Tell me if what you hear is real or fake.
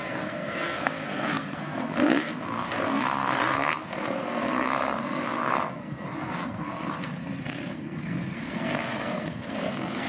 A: fake